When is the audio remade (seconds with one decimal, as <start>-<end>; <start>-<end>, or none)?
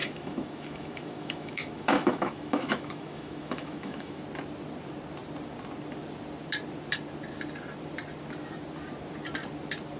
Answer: 0.0-4.2